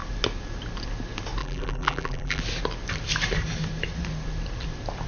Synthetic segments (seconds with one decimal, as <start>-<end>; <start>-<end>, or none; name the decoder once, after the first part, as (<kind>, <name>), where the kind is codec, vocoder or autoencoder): 1.4-2.4 (vocoder, BigVGAN v2)